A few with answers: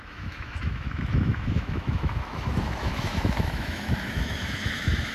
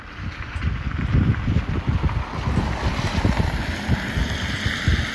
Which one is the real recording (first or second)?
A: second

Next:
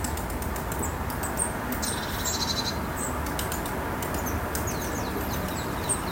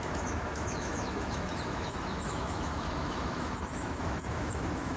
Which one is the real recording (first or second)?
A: first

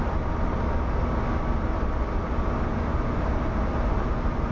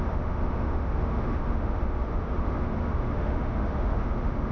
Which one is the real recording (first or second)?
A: first